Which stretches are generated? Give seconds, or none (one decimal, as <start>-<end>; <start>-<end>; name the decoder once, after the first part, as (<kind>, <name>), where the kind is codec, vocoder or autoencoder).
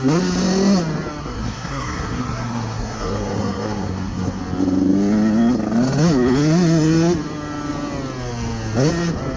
1.2-4.4 (codec, SNAC)